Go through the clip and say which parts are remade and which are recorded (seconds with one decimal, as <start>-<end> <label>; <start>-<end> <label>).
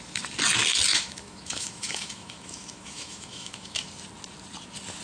0.0-0.9 recorded; 0.9-3.9 remade; 3.9-5.0 recorded